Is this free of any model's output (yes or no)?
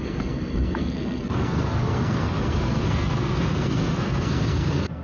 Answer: no